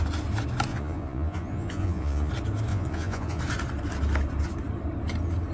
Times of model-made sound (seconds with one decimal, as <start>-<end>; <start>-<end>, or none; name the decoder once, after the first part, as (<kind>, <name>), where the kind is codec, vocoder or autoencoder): 0.7-2.3 (vocoder, Vocos); 2.7-3.4